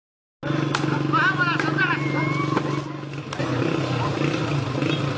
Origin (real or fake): real